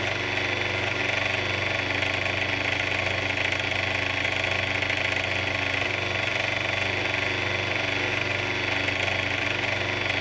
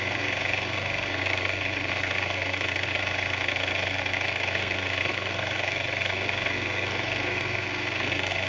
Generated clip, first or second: second